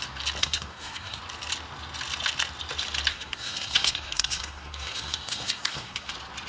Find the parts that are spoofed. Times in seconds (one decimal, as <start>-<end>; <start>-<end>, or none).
0.4-1.2; 3.1-6.1